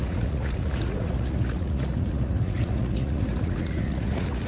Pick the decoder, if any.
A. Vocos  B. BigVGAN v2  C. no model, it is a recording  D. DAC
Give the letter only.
A